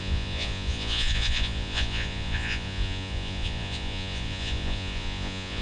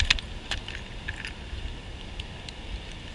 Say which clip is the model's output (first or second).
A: first